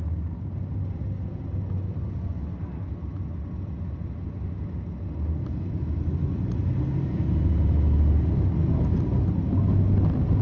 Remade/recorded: recorded